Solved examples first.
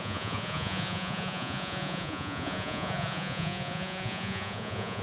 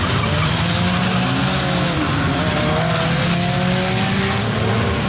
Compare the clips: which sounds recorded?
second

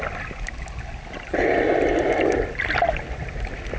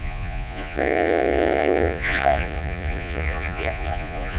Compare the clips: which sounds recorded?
first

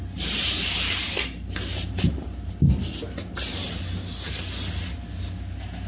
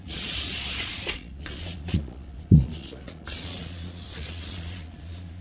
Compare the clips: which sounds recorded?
first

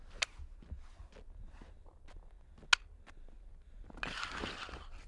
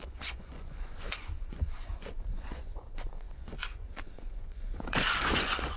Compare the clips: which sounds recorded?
first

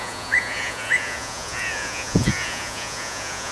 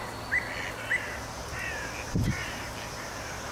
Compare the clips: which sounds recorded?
second